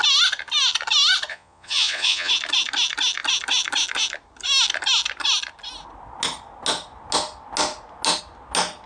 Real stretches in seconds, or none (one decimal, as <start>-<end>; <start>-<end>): 0.0-1.3; 2.3-8.9